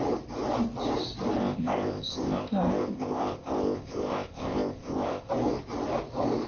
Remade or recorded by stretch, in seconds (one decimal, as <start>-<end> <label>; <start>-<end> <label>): 0.0-1.4 recorded; 1.4-5.3 remade; 5.3-6.5 recorded